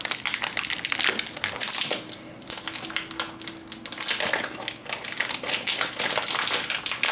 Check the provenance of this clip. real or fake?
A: real